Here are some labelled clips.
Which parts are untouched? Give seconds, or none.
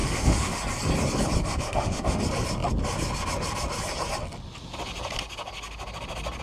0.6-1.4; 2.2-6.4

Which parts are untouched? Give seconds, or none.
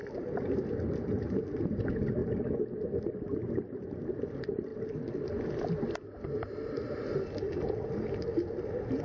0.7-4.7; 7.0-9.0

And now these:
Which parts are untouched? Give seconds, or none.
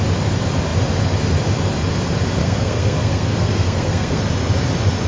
0.0-2.4; 4.2-5.1